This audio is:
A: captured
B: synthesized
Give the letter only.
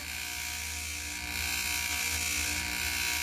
A